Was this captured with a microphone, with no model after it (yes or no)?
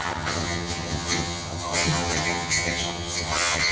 no